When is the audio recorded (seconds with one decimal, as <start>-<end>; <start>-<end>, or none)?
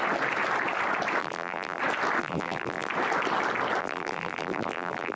0.0-1.2; 1.8-2.2; 2.9-3.8